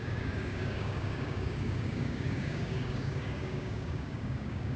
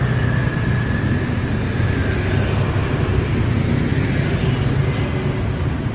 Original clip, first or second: second